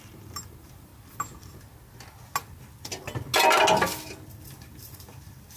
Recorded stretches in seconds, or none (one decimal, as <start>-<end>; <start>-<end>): 0.9-4.3